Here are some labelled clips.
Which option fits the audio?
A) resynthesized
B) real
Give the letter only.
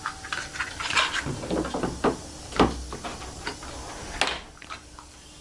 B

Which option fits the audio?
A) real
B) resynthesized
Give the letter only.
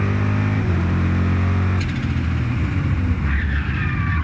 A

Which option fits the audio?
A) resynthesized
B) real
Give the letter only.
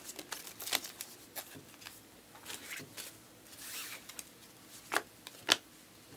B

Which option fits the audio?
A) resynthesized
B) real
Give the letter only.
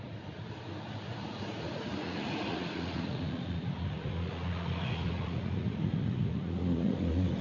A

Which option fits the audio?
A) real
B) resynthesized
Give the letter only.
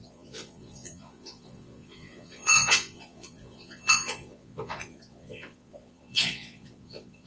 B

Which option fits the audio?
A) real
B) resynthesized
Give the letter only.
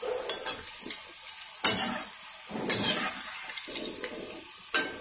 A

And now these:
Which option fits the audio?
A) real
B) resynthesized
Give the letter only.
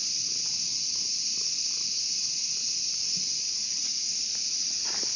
A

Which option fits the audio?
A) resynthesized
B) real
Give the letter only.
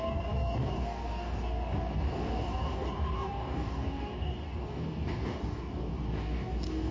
A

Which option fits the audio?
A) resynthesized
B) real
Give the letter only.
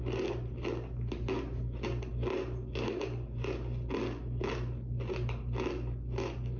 B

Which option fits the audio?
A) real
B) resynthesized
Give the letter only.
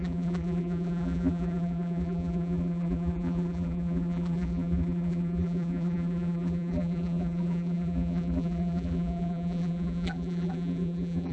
B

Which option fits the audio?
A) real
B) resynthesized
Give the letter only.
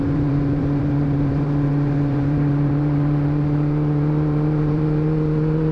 B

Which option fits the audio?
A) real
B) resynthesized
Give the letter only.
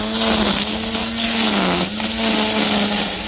A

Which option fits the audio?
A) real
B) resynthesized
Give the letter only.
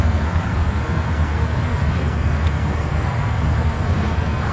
B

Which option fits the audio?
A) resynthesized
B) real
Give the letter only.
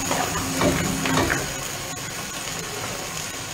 B